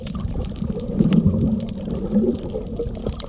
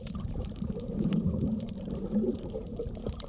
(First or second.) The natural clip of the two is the first